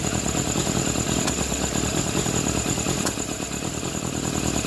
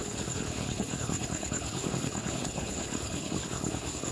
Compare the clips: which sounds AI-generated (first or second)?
second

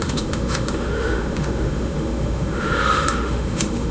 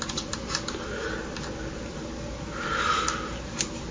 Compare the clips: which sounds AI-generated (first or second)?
first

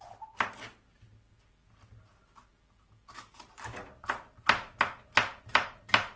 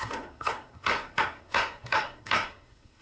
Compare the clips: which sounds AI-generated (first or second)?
second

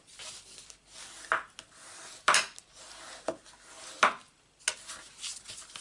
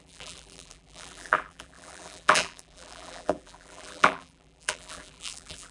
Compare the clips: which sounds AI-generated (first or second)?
second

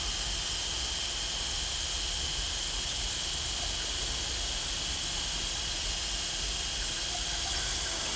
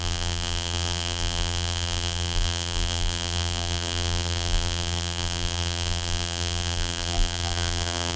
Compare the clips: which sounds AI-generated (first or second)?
second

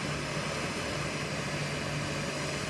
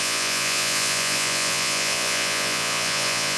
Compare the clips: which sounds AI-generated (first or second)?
second